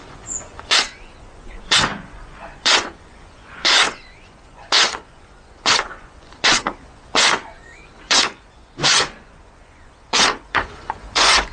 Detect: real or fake fake